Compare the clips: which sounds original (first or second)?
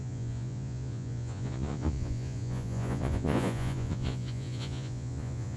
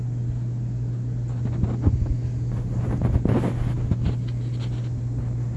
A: second